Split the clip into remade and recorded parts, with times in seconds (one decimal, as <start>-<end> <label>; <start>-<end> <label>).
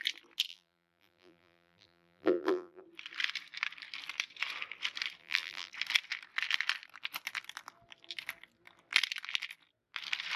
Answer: 0.0-0.5 recorded; 0.5-2.8 remade; 2.8-5.2 recorded; 5.2-5.7 remade; 5.7-10.4 recorded